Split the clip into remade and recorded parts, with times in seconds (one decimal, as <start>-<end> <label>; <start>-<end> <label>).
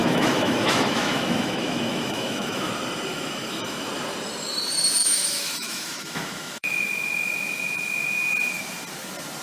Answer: 0.0-2.7 remade; 2.7-3.1 recorded; 3.1-3.9 remade; 3.9-5.0 recorded; 5.0-6.7 remade; 6.7-9.4 recorded